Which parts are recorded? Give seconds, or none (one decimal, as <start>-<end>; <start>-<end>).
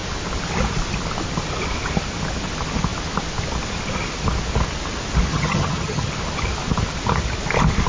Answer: 0.0-5.3; 6.1-7.9